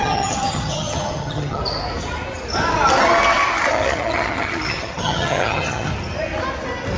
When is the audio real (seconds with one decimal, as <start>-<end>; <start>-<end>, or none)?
1.6-3.7; 5.9-7.0